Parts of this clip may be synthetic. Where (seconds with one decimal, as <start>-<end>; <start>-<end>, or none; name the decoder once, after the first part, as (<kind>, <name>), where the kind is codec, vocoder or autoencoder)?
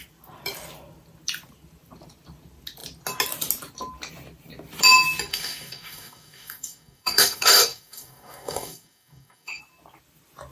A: 5.3-9.6 (codec, DAC)